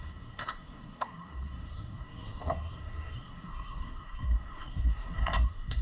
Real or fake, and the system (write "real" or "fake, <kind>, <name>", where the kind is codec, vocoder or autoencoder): fake, codec, SNAC